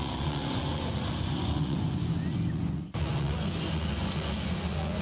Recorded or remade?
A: remade